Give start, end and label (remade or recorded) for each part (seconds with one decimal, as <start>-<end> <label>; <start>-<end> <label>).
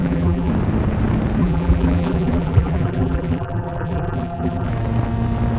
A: 0.0-0.5 remade; 0.5-1.4 recorded; 1.4-4.7 remade; 4.7-5.6 recorded